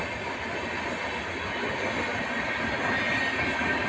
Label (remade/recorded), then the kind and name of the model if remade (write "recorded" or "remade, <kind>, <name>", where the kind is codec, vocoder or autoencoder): recorded